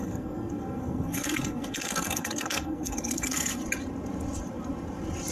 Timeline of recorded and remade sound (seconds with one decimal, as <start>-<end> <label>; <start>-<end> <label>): 0.0-3.6 remade; 3.6-5.3 recorded